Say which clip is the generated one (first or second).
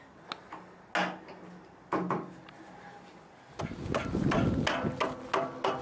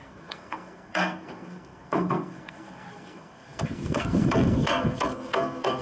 second